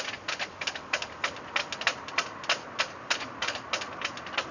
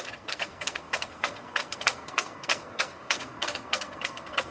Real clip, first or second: first